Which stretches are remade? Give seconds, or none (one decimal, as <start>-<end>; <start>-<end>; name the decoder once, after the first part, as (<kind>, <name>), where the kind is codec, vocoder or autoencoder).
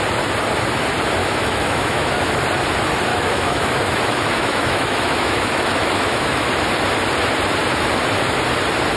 1.2-2.3 (autoencoder, DAC-VAE); 3.1-6.5